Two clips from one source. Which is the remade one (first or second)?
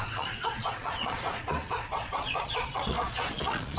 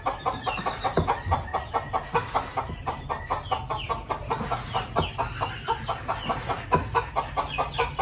first